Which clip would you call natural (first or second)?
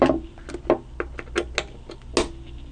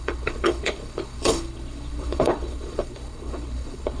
first